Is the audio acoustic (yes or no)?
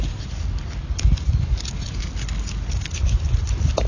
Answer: yes